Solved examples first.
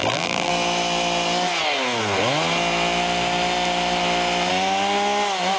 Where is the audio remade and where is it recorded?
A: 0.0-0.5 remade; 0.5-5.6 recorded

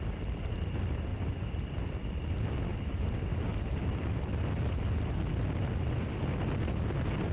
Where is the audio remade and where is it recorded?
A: 0.0-1.1 recorded; 1.1-2.2 remade; 2.2-7.3 recorded

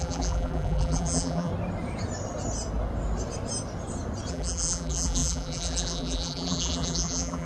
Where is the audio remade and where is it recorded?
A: 0.0-1.5 remade; 1.5-4.3 recorded; 4.3-7.5 remade